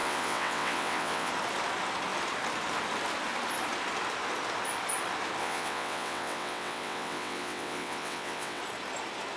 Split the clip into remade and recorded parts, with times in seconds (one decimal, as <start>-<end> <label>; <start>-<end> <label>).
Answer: 0.0-1.3 remade; 1.3-5.4 recorded; 5.4-8.6 remade; 8.6-9.4 recorded